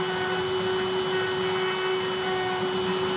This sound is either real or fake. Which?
real